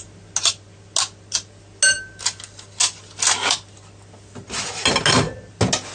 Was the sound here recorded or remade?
recorded